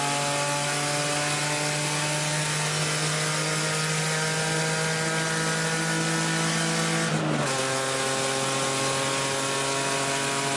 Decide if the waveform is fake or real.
real